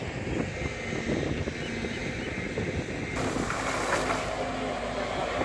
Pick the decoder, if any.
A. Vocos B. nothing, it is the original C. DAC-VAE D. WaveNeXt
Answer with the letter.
B